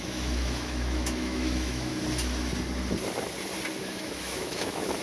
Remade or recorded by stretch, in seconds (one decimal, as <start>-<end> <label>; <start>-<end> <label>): 0.0-1.9 remade; 1.9-3.8 recorded; 3.8-5.0 remade